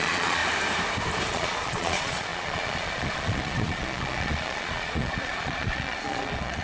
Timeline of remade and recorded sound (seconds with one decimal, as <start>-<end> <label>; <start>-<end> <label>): 0.0-0.4 remade; 0.4-1.3 recorded; 1.3-6.6 remade